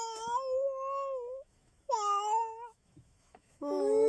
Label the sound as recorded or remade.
remade